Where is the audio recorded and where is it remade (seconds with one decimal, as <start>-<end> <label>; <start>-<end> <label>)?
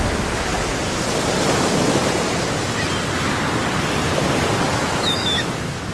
0.0-0.5 remade; 0.5-1.4 recorded; 1.4-2.0 remade; 2.0-4.7 recorded; 4.7-5.9 remade